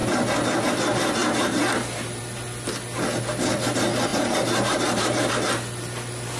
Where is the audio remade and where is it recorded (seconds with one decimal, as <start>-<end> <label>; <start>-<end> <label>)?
0.0-1.2 recorded; 1.2-2.2 remade; 2.2-4.1 recorded; 4.1-5.3 remade; 5.3-6.4 recorded